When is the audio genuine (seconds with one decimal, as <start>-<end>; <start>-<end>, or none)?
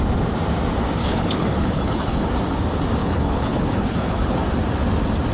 0.0-1.0; 2.3-3.0; 4.4-5.3